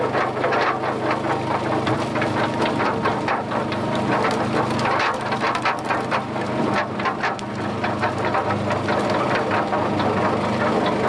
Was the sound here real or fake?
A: real